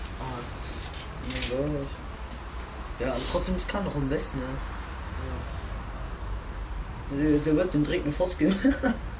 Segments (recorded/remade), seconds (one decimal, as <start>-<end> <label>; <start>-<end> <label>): 0.0-7.6 recorded; 7.6-8.7 remade; 8.7-9.2 recorded